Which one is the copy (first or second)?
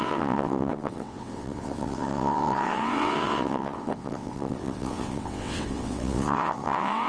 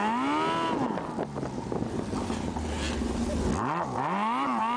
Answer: first